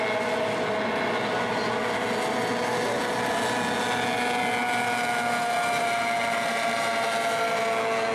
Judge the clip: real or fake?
real